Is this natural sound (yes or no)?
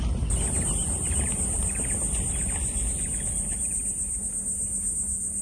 yes